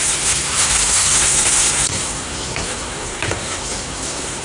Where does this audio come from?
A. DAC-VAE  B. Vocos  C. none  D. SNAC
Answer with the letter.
D